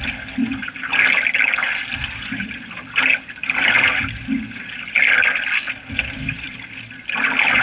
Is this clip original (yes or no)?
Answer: yes